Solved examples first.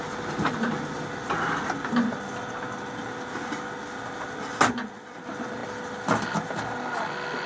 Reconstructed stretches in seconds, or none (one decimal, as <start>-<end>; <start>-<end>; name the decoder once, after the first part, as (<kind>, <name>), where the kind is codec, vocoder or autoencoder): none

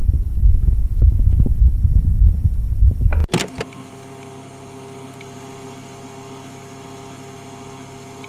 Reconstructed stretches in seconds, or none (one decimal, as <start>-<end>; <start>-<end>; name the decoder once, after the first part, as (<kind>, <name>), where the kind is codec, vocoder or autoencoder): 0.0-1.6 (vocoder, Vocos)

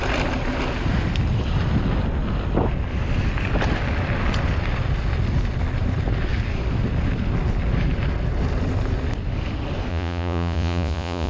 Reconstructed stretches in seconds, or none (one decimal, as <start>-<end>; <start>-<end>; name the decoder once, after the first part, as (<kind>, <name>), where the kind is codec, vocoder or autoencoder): 9.9-11.3 (vocoder, Vocos)

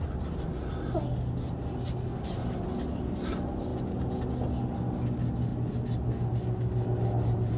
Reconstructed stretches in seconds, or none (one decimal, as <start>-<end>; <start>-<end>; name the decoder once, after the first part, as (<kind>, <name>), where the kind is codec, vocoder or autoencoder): 3.7-4.3 (vocoder, Vocos)